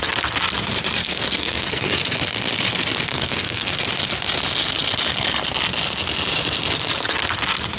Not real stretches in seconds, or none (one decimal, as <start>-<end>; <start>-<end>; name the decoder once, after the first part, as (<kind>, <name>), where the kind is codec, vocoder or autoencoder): 1.0-2.0 (codec, SNAC); 3.1-3.8